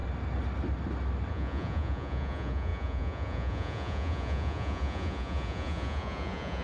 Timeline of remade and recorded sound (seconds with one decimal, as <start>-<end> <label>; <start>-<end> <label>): 0.0-1.3 recorded; 1.3-6.6 remade